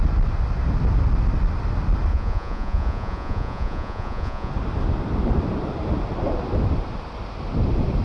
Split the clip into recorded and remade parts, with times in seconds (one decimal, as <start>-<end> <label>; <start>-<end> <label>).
0.0-2.1 recorded; 2.1-4.5 remade; 4.5-8.0 recorded